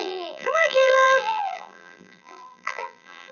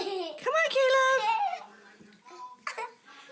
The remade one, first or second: first